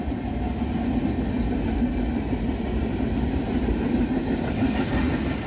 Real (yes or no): yes